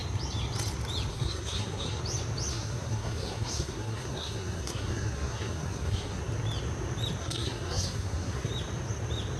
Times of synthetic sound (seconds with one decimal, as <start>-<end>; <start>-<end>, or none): 1.1-2.0; 2.5-6.2; 7.2-8.5